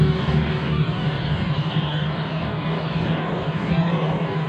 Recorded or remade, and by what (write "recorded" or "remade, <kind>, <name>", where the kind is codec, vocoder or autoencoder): remade, codec, DAC